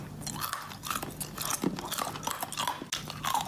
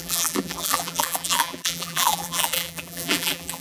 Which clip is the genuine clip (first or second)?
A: first